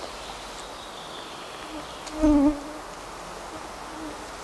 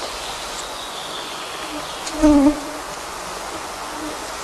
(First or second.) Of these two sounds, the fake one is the second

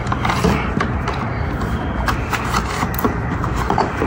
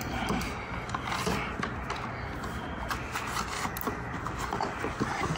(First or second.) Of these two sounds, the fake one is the first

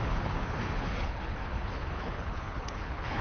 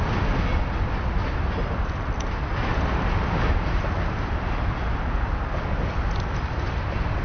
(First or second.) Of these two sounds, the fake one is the first